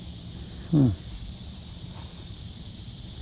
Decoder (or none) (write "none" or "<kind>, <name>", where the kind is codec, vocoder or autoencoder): none